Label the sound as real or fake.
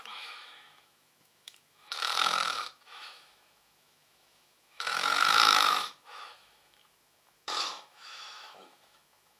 fake